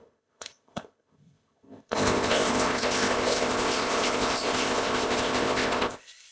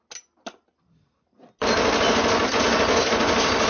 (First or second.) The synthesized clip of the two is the first